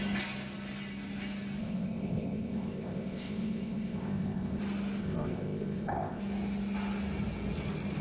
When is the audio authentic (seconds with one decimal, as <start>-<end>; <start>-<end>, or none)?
0.0-1.6; 4.6-5.0; 6.2-8.0